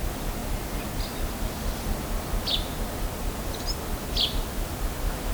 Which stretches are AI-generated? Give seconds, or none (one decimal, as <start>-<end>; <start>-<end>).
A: none

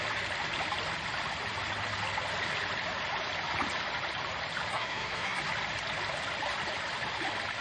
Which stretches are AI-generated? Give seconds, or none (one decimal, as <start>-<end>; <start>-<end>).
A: 4.7-5.4

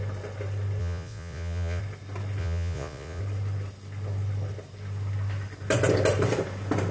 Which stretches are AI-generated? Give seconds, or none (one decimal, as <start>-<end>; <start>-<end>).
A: 0.8-1.8; 2.4-3.2

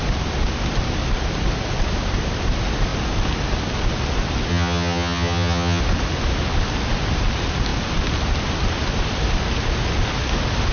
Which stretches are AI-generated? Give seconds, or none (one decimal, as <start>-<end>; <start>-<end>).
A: 4.5-5.8

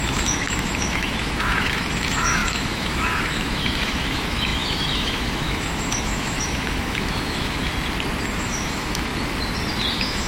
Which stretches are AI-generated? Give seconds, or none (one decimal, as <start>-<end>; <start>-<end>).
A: 0.0-7.7; 8.4-9.1; 9.9-10.3

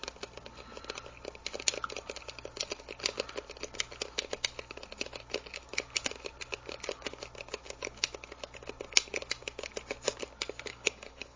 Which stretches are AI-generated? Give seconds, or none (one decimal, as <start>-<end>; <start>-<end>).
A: 10.7-11.4